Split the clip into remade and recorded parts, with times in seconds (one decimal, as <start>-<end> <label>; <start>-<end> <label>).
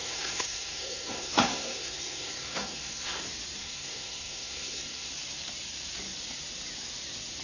0.0-3.2 remade; 3.2-3.6 recorded; 3.6-5.1 remade; 5.1-7.4 recorded